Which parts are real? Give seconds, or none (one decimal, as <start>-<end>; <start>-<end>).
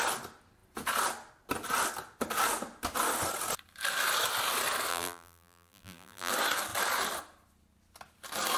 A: 0.0-4.9; 6.3-8.6